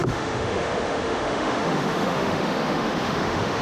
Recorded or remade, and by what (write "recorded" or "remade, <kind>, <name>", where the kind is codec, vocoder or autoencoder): remade, autoencoder, DAC-VAE